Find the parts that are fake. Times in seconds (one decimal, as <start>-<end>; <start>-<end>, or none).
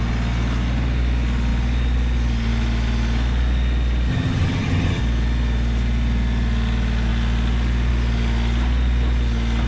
4.1-5.0